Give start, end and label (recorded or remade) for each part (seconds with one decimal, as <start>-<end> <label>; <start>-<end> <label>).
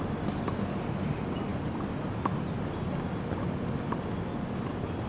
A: 0.0-5.1 recorded